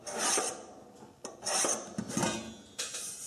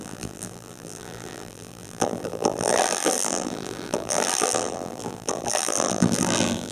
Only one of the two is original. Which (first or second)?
first